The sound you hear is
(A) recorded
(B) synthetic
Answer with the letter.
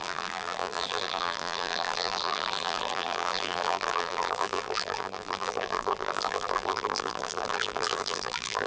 B